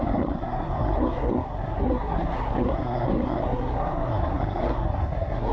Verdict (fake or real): fake